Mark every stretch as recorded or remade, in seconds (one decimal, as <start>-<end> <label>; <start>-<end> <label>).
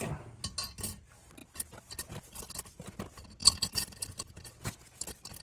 0.0-3.4 recorded; 3.4-5.0 remade; 5.0-5.4 recorded